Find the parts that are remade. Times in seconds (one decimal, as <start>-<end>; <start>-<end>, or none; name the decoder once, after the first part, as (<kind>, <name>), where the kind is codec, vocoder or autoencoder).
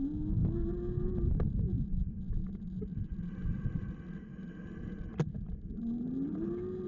none